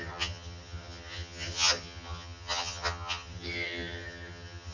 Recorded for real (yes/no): no